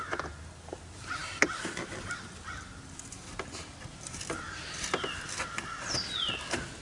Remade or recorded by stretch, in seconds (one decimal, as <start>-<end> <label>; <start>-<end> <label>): 0.0-6.8 recorded